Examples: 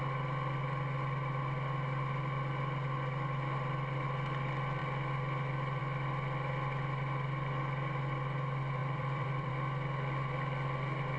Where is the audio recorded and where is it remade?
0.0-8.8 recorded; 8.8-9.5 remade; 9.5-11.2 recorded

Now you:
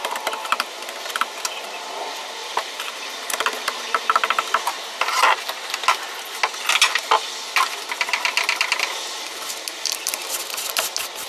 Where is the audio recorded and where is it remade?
0.0-2.4 recorded; 2.4-4.0 remade; 4.0-11.3 recorded

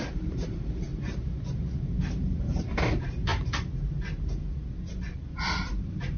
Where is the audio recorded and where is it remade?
0.0-0.9 remade; 0.9-1.8 recorded; 1.8-3.3 remade; 3.3-5.3 recorded; 5.3-6.2 remade

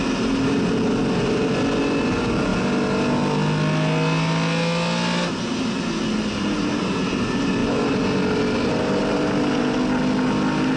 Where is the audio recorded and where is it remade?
0.0-9.0 recorded; 9.0-9.6 remade; 9.6-10.8 recorded